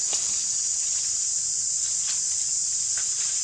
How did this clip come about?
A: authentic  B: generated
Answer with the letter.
A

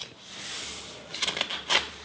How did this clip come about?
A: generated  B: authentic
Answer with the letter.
B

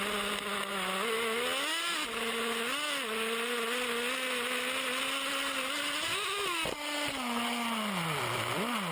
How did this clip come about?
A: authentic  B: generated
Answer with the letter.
A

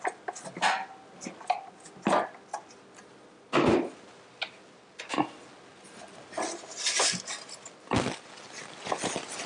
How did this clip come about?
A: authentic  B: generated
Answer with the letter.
A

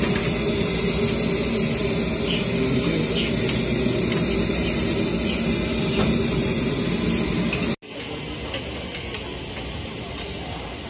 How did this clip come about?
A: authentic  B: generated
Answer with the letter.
A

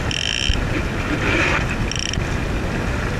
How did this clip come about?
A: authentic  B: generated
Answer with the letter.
A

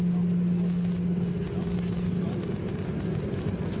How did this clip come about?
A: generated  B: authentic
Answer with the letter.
B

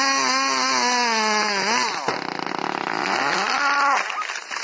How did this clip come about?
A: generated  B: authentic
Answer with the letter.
B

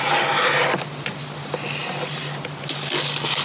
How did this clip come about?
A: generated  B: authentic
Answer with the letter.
B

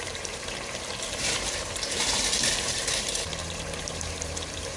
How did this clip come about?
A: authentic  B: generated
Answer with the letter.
B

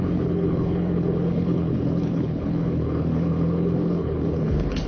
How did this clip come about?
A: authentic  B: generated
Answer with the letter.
B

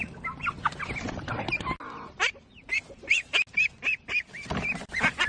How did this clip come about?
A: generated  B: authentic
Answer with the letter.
B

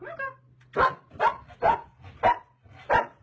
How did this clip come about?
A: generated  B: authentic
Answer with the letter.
B